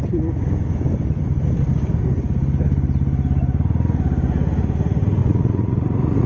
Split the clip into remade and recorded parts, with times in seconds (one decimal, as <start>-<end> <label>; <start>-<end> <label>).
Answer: 0.0-5.2 recorded; 5.2-6.3 remade